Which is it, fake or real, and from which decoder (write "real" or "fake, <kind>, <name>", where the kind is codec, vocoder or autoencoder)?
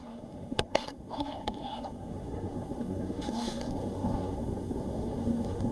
fake, codec, SNAC